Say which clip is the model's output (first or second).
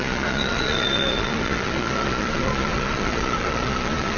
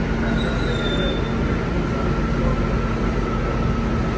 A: first